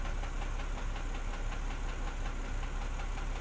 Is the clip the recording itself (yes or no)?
yes